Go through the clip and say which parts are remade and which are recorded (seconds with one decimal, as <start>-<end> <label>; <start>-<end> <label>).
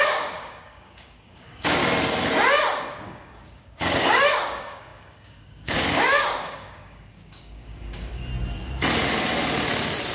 0.0-1.8 remade; 1.8-2.9 recorded; 2.9-8.3 remade; 8.3-10.1 recorded